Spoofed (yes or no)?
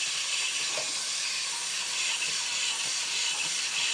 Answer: no